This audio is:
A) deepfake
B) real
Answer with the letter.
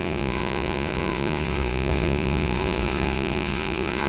A